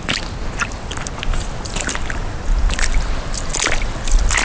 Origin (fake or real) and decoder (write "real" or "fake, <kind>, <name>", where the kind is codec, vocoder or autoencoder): real